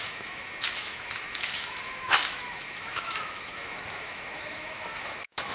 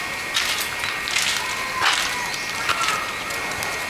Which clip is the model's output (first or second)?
first